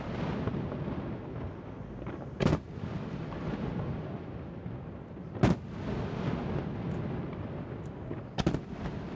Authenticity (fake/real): real